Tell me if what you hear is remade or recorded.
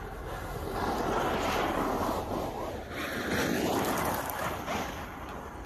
recorded